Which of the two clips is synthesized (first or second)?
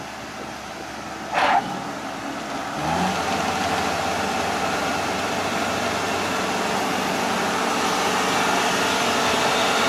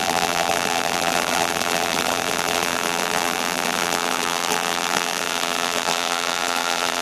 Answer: second